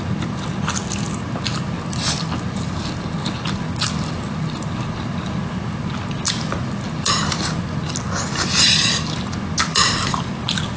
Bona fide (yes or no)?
yes